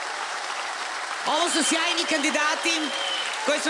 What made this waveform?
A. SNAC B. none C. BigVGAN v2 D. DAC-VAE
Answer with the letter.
C